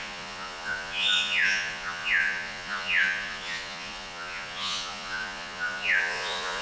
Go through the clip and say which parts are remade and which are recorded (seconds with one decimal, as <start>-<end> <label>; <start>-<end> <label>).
0.0-6.6 remade